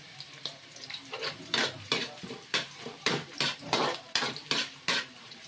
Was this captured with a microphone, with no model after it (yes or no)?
no